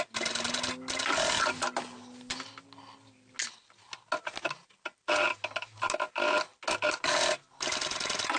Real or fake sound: real